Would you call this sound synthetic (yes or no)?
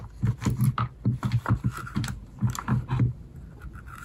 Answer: no